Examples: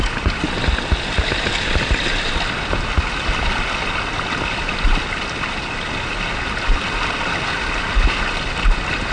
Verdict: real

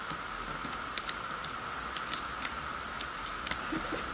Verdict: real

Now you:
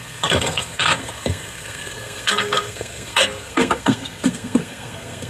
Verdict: fake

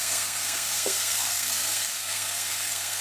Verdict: fake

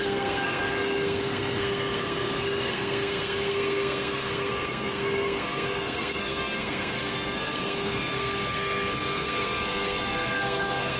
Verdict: fake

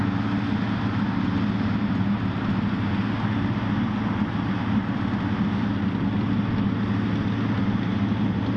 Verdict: real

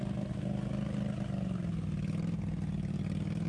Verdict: real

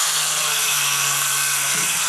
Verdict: fake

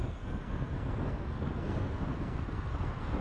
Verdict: fake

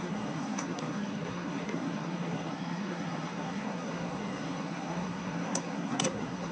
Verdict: fake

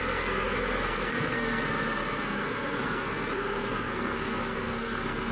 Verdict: fake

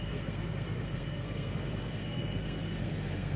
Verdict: fake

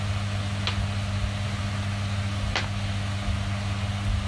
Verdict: real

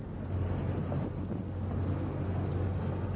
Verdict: real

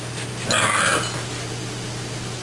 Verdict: real